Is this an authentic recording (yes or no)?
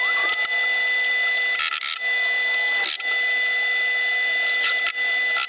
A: yes